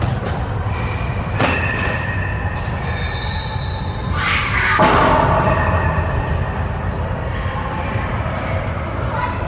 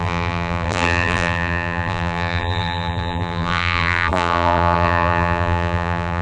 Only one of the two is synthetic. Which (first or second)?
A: second